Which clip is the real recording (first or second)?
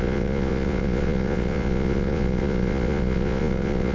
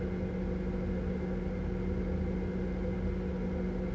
second